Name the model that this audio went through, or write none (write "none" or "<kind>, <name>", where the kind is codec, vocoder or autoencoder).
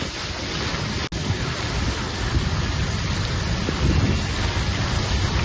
none